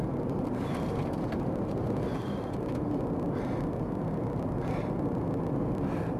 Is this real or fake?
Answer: real